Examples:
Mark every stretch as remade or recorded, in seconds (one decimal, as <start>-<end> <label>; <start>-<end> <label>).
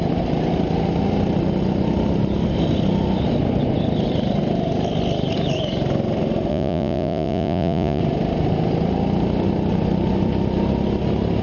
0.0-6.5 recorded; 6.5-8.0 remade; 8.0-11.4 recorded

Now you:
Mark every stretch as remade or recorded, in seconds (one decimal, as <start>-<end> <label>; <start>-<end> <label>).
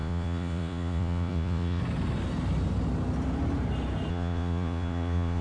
0.0-1.8 remade; 1.8-4.1 recorded; 4.1-5.4 remade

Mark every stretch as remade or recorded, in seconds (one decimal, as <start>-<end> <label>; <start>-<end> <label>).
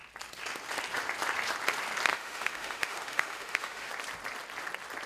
0.0-2.1 recorded; 2.1-3.9 remade; 3.9-5.1 recorded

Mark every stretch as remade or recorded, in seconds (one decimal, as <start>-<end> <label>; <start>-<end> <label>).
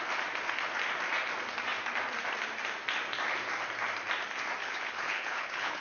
0.0-4.6 recorded; 4.6-5.8 remade